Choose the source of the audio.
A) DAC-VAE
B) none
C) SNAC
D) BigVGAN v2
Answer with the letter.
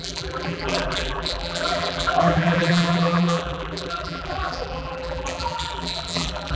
D